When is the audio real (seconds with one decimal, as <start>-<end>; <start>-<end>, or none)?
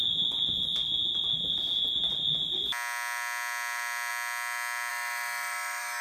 0.0-4.9